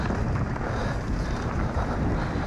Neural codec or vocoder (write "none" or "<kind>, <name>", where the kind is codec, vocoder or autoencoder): none